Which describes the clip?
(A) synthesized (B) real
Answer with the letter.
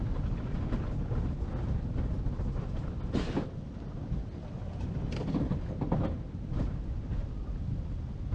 B